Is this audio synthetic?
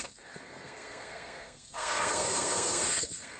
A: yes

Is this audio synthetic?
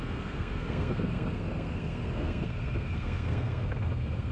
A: yes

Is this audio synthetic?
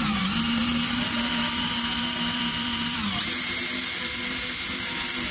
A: yes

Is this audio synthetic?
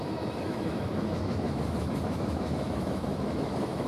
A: yes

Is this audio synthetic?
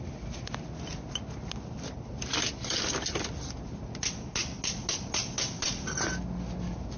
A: no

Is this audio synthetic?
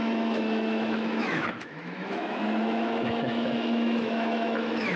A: yes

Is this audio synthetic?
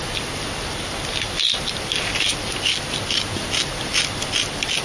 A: no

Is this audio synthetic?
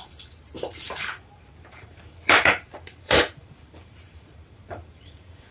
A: yes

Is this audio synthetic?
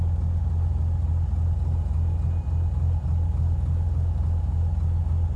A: no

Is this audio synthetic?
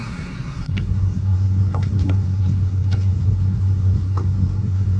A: yes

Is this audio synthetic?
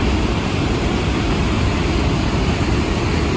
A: no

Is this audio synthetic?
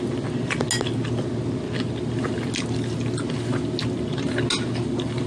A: no